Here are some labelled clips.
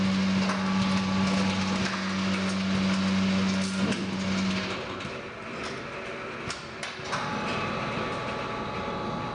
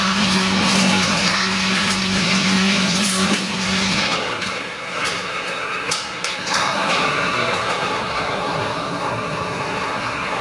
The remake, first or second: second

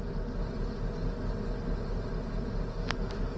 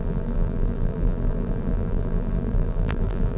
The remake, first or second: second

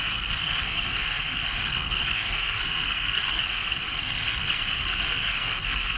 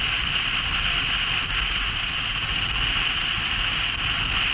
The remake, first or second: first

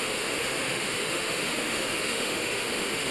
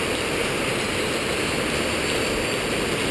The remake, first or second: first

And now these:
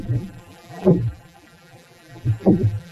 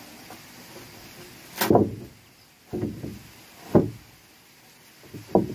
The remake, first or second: first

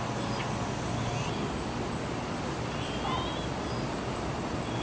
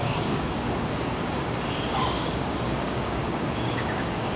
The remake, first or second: second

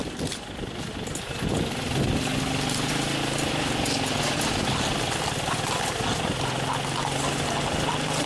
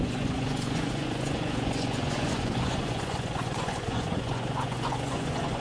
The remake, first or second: second